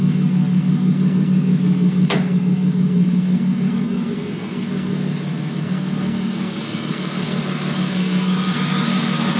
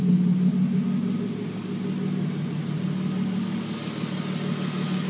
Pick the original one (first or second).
second